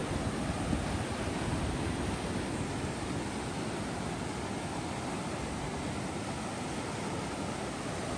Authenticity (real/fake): real